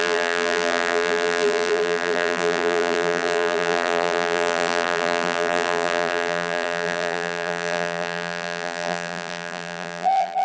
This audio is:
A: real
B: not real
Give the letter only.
B